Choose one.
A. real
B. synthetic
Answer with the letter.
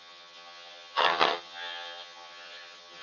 B